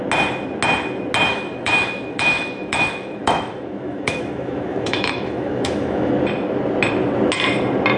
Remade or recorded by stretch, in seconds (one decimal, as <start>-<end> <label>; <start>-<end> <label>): 0.0-1.3 recorded; 1.3-6.1 remade; 6.1-8.0 recorded